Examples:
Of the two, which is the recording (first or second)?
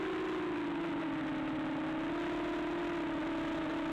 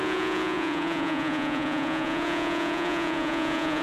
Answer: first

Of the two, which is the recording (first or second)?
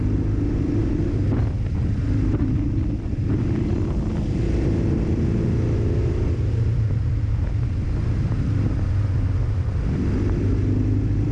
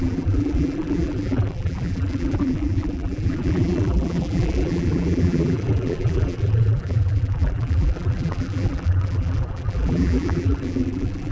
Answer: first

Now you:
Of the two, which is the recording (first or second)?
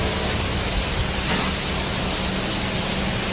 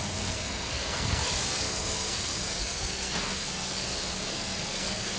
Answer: first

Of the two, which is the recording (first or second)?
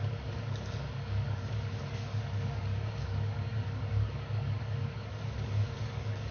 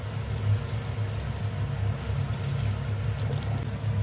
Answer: second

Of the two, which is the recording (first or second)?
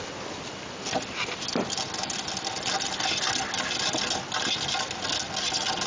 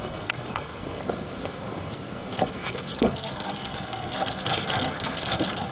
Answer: first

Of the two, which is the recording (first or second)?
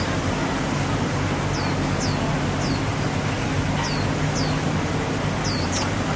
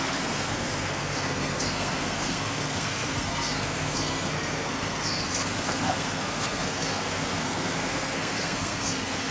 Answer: first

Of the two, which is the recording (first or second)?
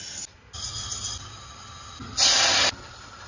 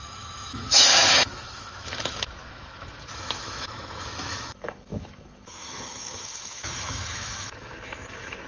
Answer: first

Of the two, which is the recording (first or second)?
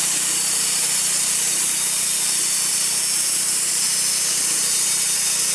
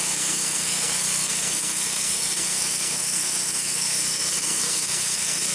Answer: first